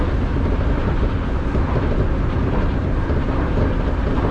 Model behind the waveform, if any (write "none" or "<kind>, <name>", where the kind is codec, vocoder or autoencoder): none